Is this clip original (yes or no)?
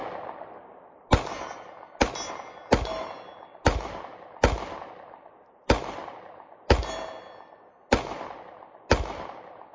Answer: yes